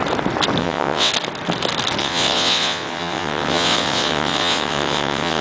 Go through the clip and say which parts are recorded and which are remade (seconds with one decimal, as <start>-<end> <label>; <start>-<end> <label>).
0.0-0.6 recorded; 0.6-1.1 remade; 1.1-2.0 recorded; 2.0-5.4 remade